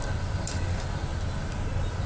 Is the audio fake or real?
real